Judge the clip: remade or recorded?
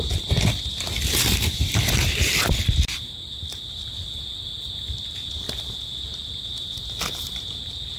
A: remade